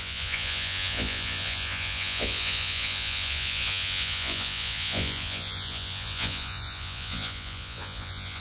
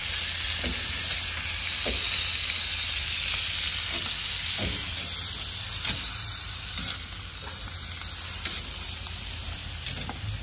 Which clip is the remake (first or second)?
first